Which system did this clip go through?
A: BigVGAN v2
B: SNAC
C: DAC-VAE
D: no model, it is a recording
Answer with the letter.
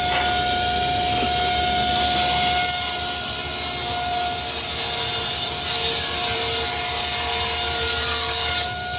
D